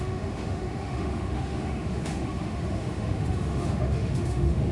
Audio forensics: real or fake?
fake